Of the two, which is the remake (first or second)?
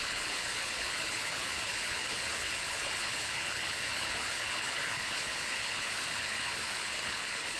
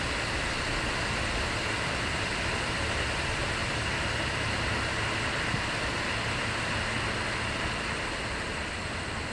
first